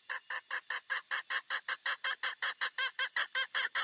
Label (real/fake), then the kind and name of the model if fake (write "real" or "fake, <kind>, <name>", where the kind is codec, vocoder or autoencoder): real